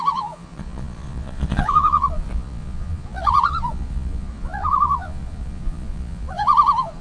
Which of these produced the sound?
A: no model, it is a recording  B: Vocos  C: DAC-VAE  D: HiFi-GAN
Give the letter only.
B